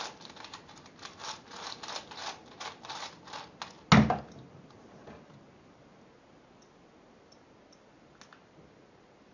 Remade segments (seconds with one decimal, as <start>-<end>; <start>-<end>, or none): none